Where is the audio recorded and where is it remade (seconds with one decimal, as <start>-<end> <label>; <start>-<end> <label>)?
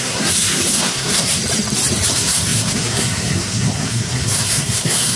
0.0-1.4 remade; 1.4-2.1 recorded; 2.1-5.2 remade